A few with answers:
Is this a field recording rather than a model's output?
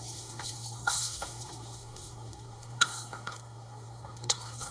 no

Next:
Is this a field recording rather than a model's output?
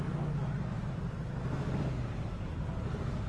yes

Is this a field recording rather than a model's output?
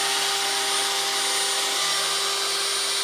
yes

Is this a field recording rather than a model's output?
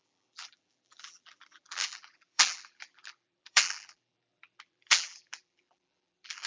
no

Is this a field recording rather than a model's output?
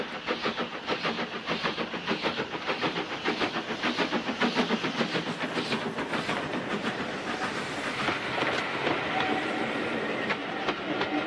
yes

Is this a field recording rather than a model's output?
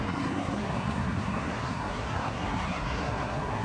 no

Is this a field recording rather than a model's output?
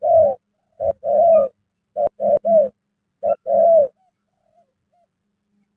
yes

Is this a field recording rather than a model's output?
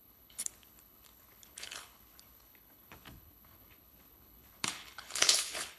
no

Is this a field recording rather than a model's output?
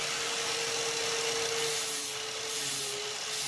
yes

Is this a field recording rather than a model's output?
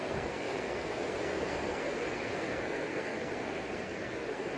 no